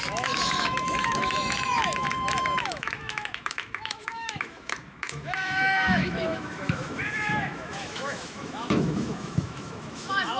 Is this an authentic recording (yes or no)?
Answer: no